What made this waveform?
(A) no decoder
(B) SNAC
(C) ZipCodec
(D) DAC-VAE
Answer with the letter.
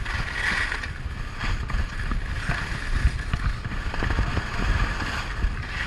A